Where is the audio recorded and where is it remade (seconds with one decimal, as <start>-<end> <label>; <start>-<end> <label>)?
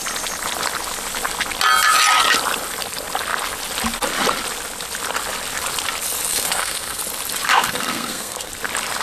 0.0-6.3 recorded; 6.3-7.0 remade; 7.0-7.5 recorded; 7.5-8.5 remade; 8.5-9.0 recorded